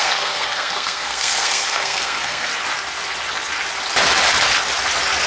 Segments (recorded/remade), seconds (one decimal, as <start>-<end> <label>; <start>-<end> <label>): 0.0-2.5 remade; 2.5-5.3 recorded